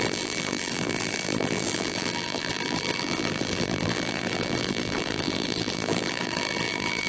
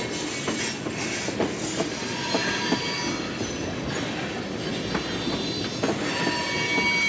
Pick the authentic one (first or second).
second